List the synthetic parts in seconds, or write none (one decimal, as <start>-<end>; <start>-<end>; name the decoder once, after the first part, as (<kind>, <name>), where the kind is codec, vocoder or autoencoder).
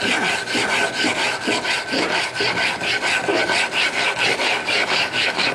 4.6-5.5 (codec, DAC)